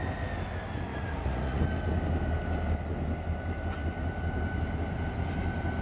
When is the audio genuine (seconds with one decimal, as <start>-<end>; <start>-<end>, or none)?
0.0-0.9; 1.6-5.8